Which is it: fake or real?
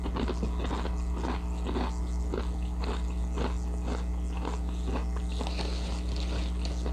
real